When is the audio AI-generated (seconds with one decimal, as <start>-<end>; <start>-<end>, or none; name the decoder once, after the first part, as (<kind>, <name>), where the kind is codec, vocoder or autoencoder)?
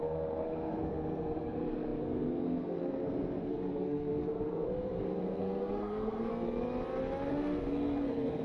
0.0-6.3 (codec, SNAC); 7.3-8.4